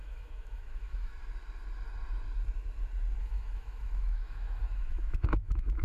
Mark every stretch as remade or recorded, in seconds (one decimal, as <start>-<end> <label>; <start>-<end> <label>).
0.0-1.1 remade; 1.1-3.2 recorded; 3.2-5.8 remade